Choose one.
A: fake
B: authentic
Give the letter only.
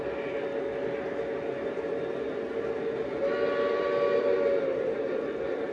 B